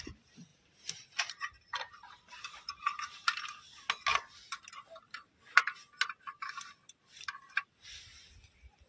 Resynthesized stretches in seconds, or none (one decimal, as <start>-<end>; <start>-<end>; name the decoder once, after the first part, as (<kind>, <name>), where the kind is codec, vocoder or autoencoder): 0.5-3.1 (vocoder, BigVGAN v2)